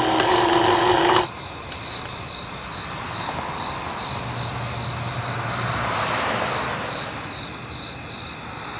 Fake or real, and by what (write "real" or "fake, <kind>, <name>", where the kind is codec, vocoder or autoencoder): real